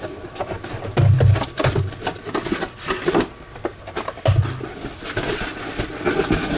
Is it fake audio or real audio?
real